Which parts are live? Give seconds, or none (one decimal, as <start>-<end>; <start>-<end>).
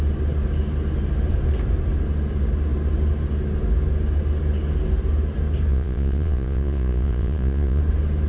0.0-5.7; 7.8-8.3